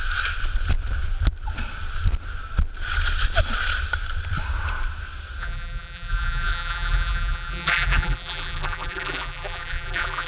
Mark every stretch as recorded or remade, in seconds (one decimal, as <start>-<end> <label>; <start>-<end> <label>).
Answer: 0.0-5.4 recorded; 5.4-10.3 remade